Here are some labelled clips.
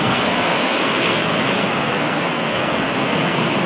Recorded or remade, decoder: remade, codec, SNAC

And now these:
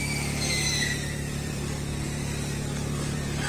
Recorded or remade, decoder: remade, vocoder, BigVGAN v2